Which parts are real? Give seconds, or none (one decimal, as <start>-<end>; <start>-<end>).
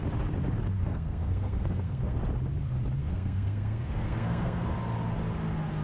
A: 0.0-0.8; 2.2-3.0; 4.7-5.8